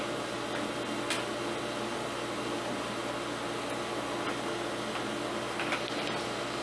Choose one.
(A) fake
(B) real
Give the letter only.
B